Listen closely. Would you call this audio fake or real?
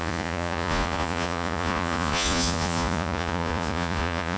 fake